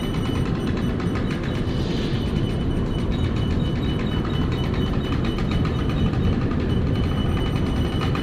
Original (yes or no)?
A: yes